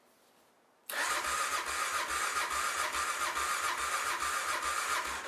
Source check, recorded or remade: recorded